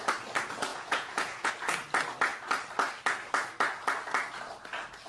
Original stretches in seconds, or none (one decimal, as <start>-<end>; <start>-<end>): 0.0-0.7; 1.5-5.1